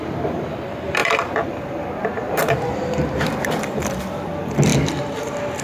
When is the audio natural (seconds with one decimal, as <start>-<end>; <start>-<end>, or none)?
4.7-5.6